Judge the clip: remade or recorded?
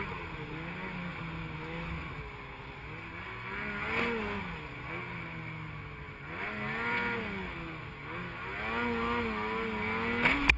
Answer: recorded